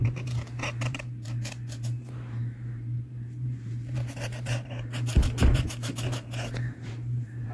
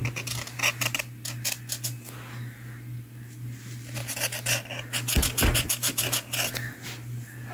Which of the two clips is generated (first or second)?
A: first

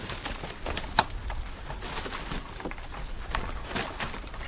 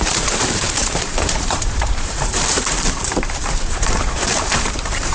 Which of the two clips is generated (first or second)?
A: second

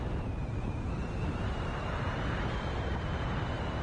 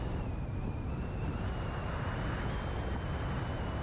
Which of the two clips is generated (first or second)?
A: first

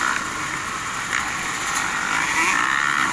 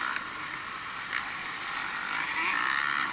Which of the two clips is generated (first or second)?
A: second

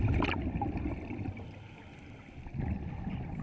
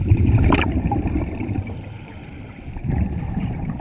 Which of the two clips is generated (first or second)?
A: second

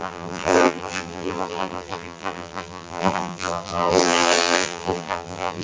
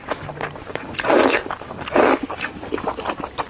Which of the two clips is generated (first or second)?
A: first